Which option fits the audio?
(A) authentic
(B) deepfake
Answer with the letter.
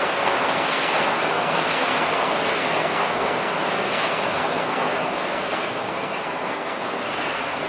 B